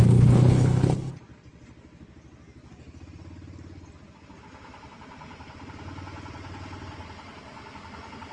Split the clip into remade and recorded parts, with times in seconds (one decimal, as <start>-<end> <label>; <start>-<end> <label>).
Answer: 0.0-1.1 remade; 1.1-8.3 recorded